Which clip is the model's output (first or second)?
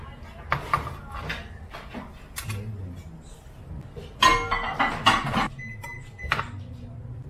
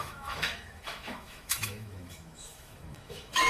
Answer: second